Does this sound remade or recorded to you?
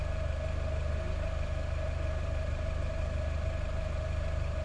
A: recorded